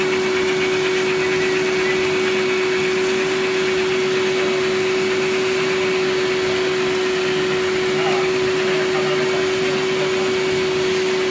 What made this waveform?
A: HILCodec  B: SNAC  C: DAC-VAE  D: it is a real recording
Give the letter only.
D